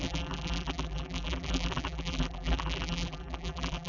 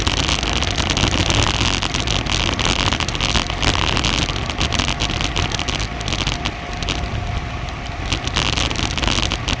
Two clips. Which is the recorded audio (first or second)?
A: second